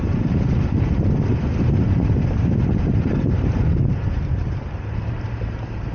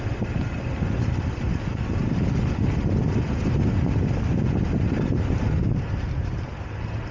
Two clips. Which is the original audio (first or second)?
second